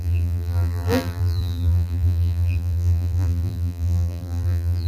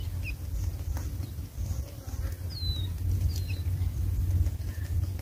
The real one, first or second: second